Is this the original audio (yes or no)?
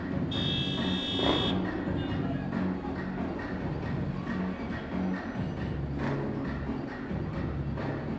yes